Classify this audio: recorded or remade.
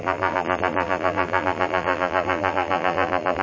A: remade